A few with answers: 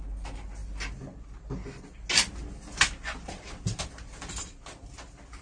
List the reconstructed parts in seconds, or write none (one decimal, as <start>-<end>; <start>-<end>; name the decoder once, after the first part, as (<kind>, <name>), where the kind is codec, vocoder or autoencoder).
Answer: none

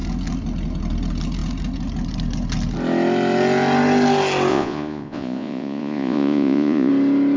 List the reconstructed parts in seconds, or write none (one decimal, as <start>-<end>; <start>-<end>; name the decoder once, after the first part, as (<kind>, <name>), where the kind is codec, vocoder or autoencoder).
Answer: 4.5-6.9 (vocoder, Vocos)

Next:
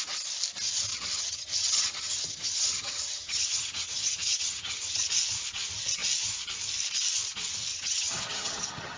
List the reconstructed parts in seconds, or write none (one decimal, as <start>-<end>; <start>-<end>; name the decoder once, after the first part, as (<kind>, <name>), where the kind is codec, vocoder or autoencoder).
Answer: 0.9-5.1 (vocoder, HiFi-GAN); 7.7-9.0